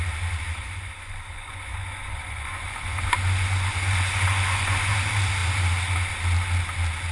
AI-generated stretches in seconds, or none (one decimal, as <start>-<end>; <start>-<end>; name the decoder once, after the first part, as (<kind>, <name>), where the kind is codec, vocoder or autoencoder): 0.6-4.9 (vocoder, Vocos)